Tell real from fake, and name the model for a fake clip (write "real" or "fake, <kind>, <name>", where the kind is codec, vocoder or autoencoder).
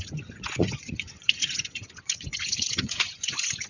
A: fake, vocoder, Vocos